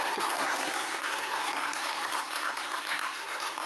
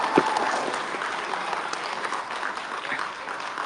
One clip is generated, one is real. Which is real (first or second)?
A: second